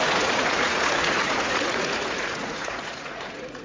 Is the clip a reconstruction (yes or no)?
yes